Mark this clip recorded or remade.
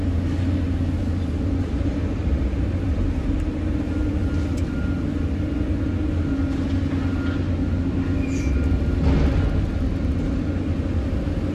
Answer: recorded